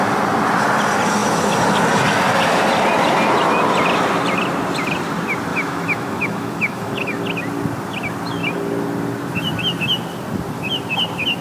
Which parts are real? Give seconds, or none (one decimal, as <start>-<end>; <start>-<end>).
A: 0.0-5.5; 7.2-11.4